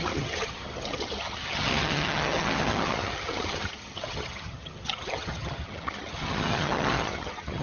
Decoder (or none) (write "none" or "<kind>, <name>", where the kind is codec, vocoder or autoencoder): vocoder, HiFi-GAN